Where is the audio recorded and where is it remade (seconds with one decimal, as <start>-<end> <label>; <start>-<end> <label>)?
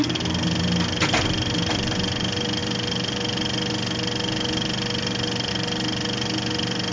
0.0-6.9 recorded